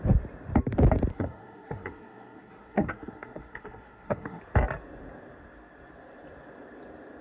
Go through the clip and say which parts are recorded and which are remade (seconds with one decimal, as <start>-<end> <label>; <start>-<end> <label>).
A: 0.0-1.1 recorded; 1.1-4.4 remade; 4.4-7.2 recorded